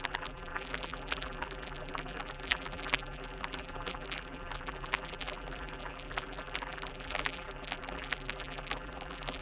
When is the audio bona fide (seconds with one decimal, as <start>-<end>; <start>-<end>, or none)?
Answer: none